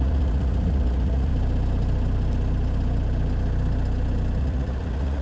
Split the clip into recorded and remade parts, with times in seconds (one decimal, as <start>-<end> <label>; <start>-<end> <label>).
0.0-1.3 remade; 1.3-4.4 recorded; 4.4-5.2 remade